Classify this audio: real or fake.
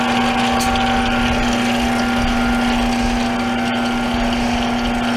real